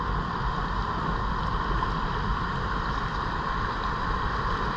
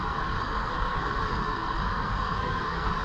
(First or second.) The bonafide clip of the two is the first